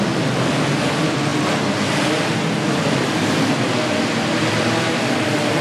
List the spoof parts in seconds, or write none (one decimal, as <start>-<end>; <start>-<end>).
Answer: 1.3-4.7